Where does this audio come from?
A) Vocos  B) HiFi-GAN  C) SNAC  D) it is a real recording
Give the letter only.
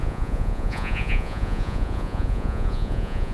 A